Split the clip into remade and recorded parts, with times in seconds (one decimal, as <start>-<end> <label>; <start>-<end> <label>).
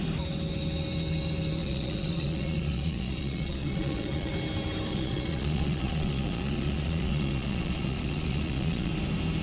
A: 0.0-1.6 recorded; 1.6-4.3 remade; 4.3-4.9 recorded; 4.9-8.9 remade; 8.9-9.4 recorded